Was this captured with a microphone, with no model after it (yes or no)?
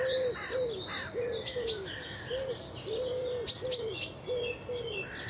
yes